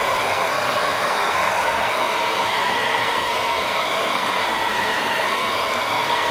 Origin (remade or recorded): remade